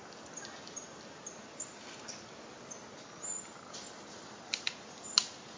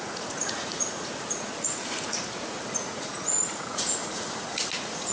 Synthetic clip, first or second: second